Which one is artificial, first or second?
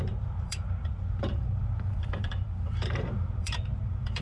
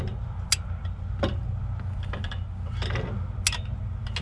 first